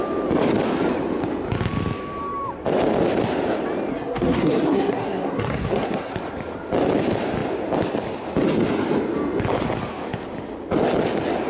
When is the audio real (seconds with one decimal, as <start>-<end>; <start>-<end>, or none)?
0.0-3.9; 6.1-11.5